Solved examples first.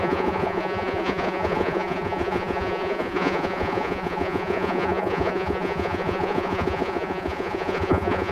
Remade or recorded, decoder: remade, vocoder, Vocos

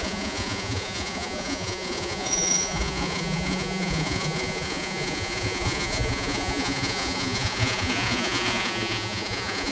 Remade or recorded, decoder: remade, vocoder, Vocos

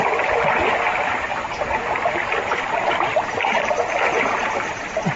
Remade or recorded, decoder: recorded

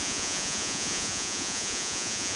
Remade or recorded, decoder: remade, vocoder, Vocos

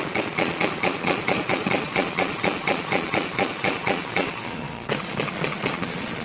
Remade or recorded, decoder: remade, vocoder, Vocos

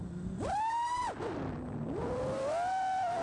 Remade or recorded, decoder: recorded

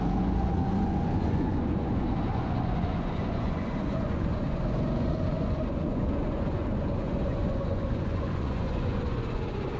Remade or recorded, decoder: remade, vocoder, Vocos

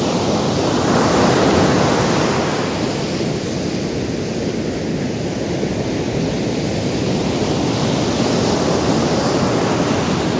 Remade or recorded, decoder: recorded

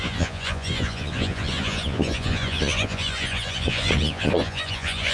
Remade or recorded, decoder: remade, vocoder, Vocos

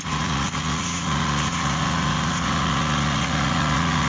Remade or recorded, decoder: remade, vocoder, Vocos